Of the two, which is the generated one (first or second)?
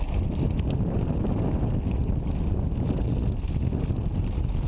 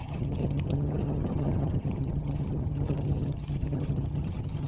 second